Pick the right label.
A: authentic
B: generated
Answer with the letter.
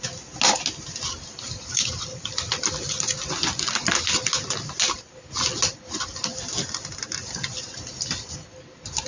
A